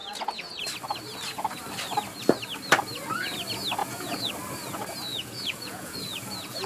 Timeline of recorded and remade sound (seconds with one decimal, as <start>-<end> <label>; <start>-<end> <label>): 0.0-0.6 remade; 0.6-3.8 recorded; 3.8-4.3 remade; 4.3-5.1 recorded; 5.1-6.7 remade

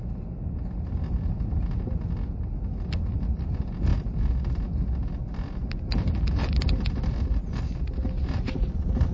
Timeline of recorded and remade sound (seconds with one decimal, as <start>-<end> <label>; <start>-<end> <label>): 0.0-9.1 recorded

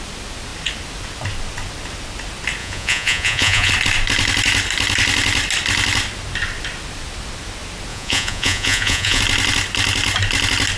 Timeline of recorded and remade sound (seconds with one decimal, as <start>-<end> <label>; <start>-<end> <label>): 0.0-2.6 recorded; 2.6-3.7 remade; 3.7-7.9 recorded; 7.9-9.2 remade; 9.2-10.8 recorded

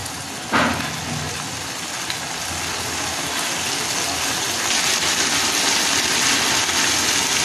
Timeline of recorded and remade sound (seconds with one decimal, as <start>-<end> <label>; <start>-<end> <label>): 0.0-7.4 recorded

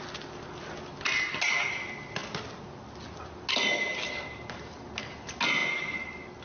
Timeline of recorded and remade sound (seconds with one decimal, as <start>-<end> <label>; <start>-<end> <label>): 0.0-6.4 recorded